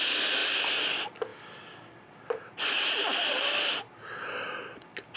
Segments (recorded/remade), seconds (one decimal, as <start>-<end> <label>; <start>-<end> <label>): 0.0-5.2 recorded